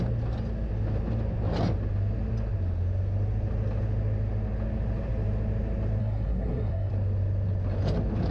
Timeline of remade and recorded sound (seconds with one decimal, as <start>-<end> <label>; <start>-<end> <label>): 0.0-6.0 recorded; 6.0-6.9 remade; 6.9-8.3 recorded